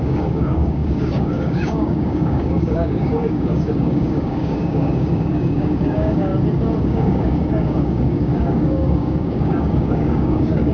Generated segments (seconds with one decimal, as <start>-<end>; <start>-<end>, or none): 0.0-6.3; 6.8-10.7